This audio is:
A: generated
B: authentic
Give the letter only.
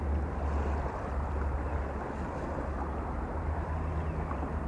B